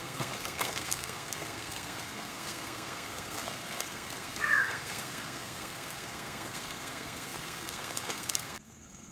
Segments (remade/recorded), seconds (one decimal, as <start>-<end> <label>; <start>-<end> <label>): 0.0-9.1 remade